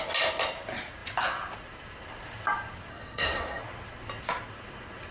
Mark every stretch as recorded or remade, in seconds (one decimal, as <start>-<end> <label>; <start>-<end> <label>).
0.0-2.9 recorded; 2.9-3.6 remade; 3.6-5.1 recorded